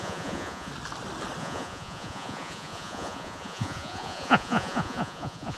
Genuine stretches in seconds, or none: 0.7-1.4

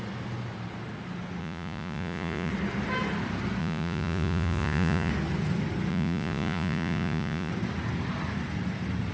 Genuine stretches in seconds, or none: 0.0-1.4; 2.5-3.6; 5.1-5.9; 7.5-9.1

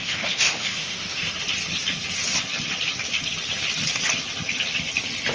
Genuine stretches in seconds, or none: 1.3-5.3

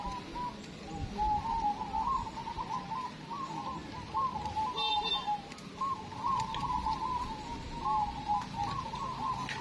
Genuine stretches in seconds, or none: 0.0-9.6

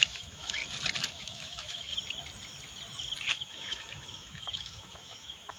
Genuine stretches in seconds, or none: 0.6-1.1; 1.9-3.3

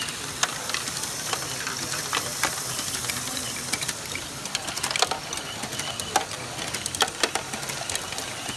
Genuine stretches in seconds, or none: 0.0-2.3; 3.1-8.6

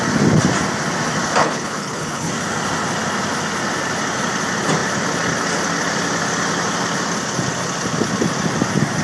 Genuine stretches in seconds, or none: 0.0-1.4; 2.3-9.0

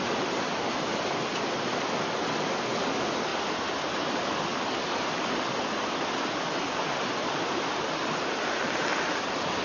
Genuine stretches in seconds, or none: 0.0-0.9; 1.8-9.6